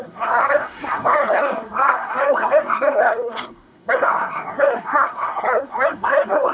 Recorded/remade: remade